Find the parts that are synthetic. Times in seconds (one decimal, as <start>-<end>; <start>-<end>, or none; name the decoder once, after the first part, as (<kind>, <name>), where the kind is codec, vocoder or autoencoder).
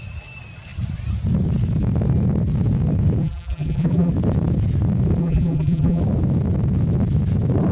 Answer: 3.2-4.1 (vocoder, BigVGAN v2); 5.2-6.0